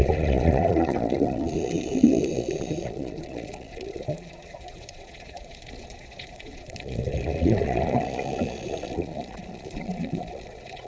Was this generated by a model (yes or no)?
yes